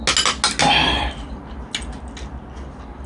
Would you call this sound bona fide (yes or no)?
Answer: yes